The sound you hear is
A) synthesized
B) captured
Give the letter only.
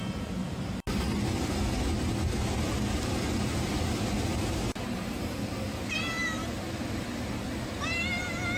B